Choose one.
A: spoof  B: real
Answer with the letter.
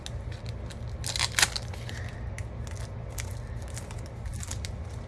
B